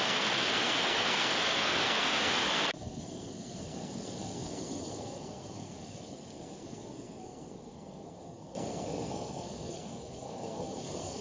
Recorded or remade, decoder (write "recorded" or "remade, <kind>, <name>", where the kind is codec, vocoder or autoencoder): remade, codec, SNAC